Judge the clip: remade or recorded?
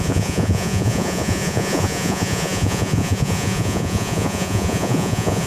remade